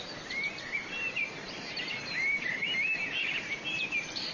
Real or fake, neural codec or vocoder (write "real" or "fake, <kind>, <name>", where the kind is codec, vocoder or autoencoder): fake, vocoder, BigVGAN v2